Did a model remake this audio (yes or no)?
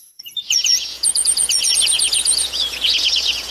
yes